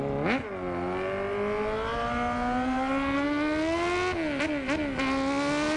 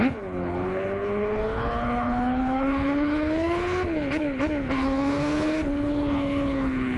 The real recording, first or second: first